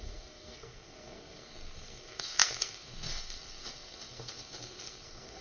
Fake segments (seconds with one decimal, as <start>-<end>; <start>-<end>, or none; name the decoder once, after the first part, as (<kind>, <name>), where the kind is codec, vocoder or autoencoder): 0.0-5.4 (codec, SNAC)